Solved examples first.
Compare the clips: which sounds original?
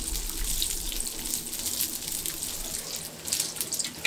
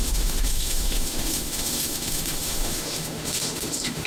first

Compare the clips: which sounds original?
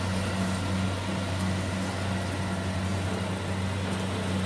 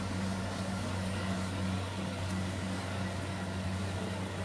first